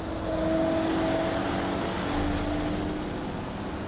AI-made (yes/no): no